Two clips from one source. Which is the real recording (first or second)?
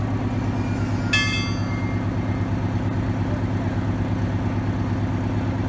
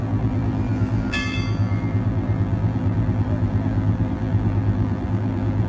first